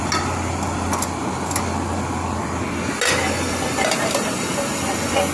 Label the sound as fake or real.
real